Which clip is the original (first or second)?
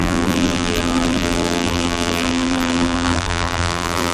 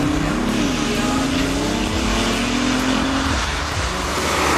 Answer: second